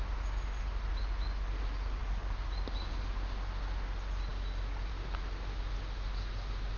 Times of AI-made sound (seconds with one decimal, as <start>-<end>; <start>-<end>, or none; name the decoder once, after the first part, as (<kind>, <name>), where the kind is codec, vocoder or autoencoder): none